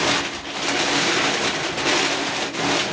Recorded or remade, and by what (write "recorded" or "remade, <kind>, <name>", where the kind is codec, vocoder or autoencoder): recorded